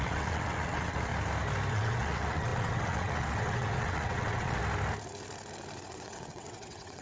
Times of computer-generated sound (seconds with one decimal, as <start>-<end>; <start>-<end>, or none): 0.0-1.1; 1.7-4.6; 5.9-7.0